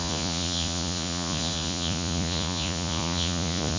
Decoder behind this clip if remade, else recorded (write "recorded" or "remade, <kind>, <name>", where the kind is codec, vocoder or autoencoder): remade, vocoder, Vocos